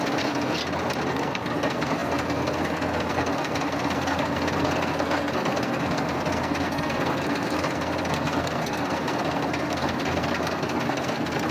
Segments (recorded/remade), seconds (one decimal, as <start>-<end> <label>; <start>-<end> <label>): 0.0-0.6 remade; 0.6-1.1 recorded; 1.1-11.5 remade

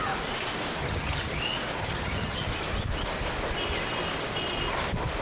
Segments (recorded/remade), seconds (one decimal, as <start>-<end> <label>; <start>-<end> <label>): 0.0-0.8 recorded; 0.8-1.4 remade; 1.4-1.8 recorded; 1.8-2.5 remade; 2.5-5.2 recorded

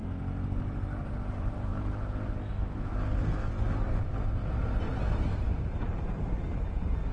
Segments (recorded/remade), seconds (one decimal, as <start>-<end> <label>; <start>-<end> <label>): 0.0-1.7 remade; 1.7-3.5 recorded; 3.5-7.1 remade